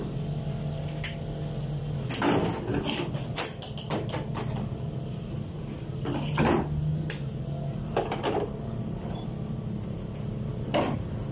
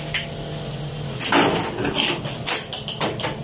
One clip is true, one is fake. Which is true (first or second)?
second